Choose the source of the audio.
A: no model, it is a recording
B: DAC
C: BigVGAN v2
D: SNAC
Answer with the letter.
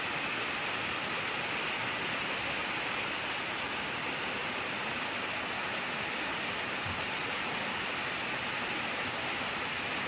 A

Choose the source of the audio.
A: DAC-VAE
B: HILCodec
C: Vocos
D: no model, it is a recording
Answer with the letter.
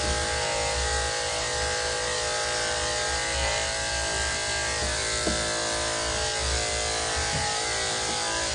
D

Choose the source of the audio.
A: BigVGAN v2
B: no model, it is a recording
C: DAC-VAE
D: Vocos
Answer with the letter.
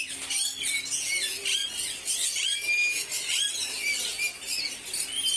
B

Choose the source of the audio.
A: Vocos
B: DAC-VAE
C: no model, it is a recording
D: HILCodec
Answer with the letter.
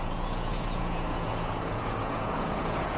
A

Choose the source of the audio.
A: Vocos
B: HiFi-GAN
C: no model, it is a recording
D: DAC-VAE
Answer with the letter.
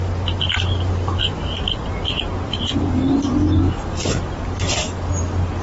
C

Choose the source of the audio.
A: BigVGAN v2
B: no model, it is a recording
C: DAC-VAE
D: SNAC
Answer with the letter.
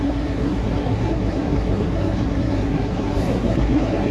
D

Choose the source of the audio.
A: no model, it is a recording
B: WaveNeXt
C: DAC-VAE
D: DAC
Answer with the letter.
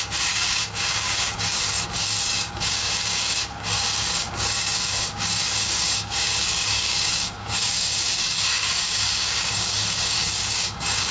D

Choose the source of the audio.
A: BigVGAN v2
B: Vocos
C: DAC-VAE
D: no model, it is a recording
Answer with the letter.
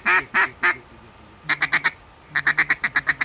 D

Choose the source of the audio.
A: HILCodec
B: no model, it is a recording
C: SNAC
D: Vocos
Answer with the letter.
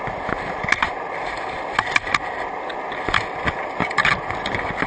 B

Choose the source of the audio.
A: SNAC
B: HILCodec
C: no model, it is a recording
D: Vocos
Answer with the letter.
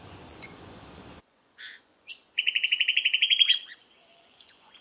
D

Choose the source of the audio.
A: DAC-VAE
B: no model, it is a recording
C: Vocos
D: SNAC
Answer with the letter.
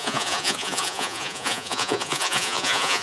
C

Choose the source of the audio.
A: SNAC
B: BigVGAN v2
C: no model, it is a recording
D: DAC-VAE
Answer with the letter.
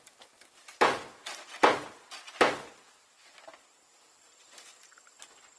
C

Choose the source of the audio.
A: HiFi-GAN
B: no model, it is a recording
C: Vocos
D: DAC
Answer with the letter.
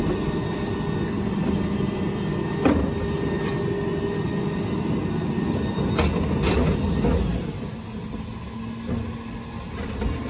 B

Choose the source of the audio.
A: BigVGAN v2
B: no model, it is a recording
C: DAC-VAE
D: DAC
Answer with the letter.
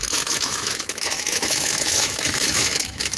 C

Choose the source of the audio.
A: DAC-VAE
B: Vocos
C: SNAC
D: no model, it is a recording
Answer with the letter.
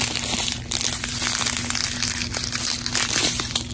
D